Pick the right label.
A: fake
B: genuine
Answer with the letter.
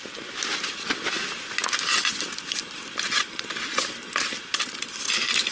B